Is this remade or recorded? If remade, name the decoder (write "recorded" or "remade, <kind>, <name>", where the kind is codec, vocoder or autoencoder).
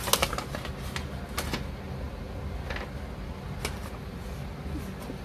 recorded